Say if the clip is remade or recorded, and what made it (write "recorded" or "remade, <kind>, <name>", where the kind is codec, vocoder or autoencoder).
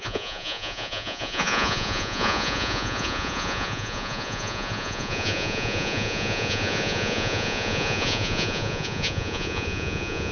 remade, vocoder, Vocos